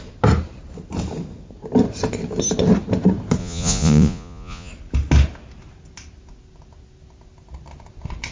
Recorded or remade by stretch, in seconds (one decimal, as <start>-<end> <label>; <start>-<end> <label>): 0.0-3.4 recorded; 3.4-4.7 remade; 4.7-8.3 recorded

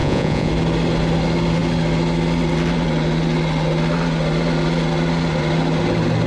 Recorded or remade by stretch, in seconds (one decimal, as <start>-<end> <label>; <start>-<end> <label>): 0.0-0.5 remade; 0.5-6.3 recorded

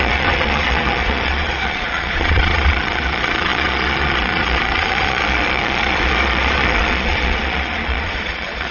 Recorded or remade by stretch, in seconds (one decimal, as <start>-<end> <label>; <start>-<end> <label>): 0.0-8.7 remade

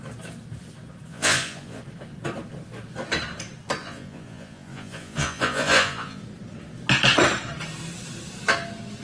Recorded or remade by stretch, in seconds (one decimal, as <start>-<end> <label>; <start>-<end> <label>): 0.0-1.1 recorded; 1.1-1.8 remade; 1.8-3.8 recorded; 3.8-6.2 remade; 6.2-9.0 recorded

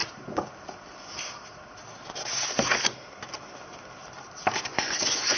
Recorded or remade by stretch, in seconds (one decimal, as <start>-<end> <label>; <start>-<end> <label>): 0.0-4.7 recorded; 4.7-5.4 remade

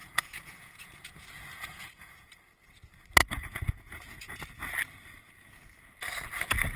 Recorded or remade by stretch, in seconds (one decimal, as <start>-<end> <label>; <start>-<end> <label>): 0.0-2.3 remade; 2.3-3.2 recorded; 3.2-4.4 remade; 4.4-6.8 recorded